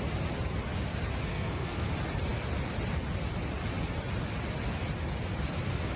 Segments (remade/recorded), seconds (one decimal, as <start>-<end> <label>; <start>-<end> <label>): 0.0-1.3 recorded; 1.3-1.9 remade; 1.9-6.0 recorded